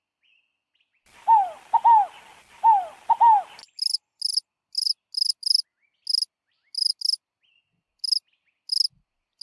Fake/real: real